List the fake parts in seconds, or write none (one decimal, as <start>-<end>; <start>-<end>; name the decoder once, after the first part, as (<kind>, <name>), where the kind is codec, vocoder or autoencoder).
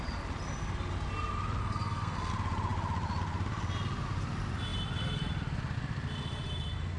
1.6-2.3 (codec, SNAC)